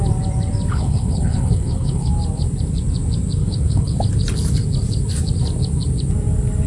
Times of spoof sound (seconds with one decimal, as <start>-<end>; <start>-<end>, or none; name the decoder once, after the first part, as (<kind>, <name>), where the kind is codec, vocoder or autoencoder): 0.7-2.1 (codec, HILCodec); 3.4-4.0